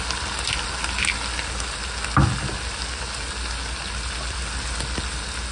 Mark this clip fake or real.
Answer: real